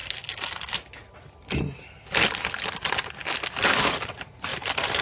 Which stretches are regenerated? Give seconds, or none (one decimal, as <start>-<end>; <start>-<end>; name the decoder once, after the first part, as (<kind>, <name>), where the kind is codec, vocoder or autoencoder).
4.5-5.0 (vocoder, BigVGAN v2)